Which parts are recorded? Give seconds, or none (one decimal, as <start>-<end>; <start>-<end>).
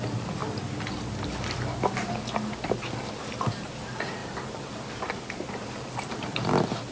0.0-6.9